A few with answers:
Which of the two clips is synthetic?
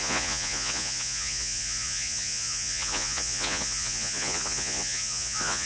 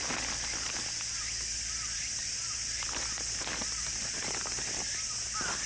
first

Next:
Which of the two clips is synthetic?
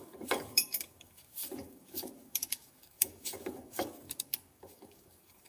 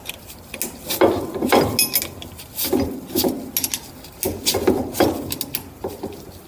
first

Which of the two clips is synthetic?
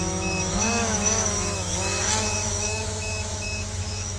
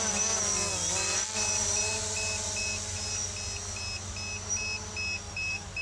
first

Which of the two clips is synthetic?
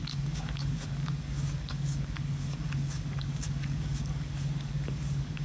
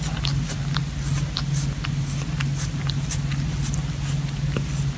first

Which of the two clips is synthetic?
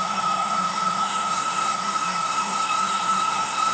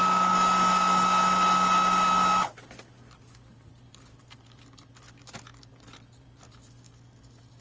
first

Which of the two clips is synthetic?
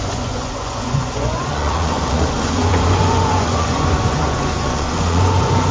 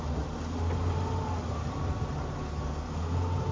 first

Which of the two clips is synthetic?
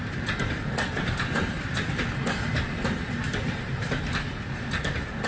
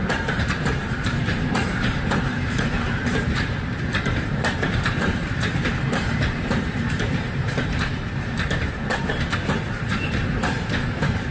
second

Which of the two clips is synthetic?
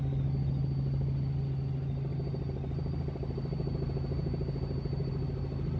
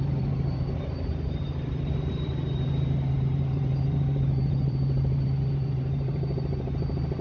second